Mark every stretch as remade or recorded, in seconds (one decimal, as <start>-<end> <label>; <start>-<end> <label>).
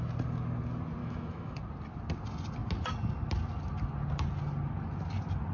0.0-1.0 recorded; 1.0-1.6 remade; 1.6-5.5 recorded